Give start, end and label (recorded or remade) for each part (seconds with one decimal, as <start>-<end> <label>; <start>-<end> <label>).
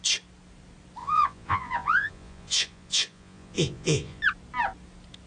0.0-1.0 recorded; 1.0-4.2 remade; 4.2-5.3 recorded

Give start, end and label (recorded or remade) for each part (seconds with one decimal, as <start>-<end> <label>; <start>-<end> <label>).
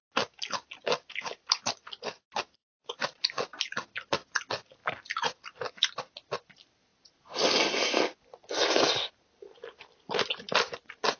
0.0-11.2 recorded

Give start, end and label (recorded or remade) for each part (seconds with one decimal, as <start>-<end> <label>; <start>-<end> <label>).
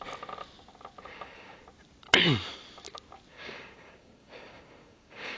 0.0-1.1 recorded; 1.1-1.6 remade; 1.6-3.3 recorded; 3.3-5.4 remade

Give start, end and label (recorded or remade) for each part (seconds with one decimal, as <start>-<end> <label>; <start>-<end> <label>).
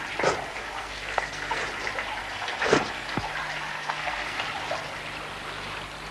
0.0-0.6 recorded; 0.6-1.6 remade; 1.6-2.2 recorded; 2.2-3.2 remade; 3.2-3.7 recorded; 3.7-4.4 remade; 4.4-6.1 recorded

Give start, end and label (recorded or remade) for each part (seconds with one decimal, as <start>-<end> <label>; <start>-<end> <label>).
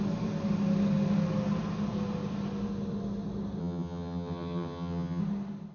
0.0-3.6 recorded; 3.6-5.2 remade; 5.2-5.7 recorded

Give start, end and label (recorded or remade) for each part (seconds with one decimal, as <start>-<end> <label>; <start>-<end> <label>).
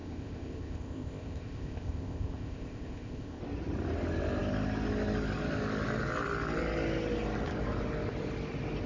0.0-3.4 remade; 3.4-8.9 recorded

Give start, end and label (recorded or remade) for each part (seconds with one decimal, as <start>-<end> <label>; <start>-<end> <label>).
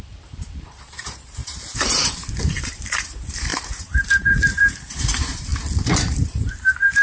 0.0-5.5 remade; 5.5-6.1 recorded; 6.1-7.0 remade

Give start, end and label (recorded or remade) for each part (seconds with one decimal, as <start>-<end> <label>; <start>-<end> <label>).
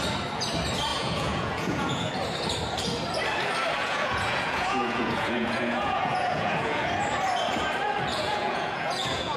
0.0-0.9 recorded; 0.9-2.1 remade; 2.1-3.8 recorded; 3.8-6.9 remade; 6.9-8.1 recorded; 8.1-9.4 remade